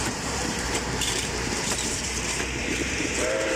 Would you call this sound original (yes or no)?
no